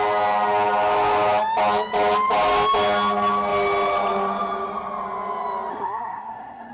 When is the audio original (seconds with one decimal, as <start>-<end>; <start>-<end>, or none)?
0.0-5.7